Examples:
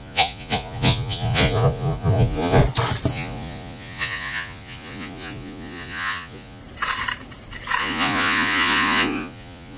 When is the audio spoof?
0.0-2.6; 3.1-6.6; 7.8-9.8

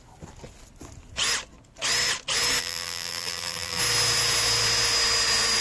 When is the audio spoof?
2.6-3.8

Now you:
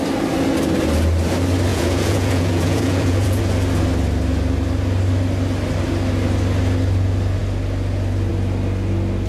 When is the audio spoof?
1.7-3.4

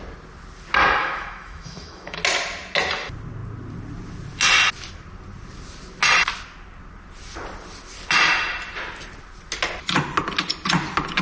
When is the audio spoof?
1.0-2.2